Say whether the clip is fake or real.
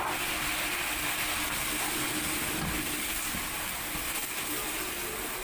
real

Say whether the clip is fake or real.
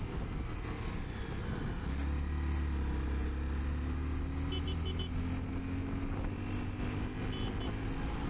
real